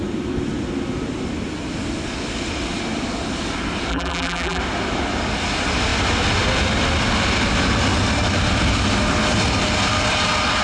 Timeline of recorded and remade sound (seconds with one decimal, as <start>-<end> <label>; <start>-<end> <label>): 0.0-3.9 recorded; 3.9-4.6 remade; 4.6-10.6 recorded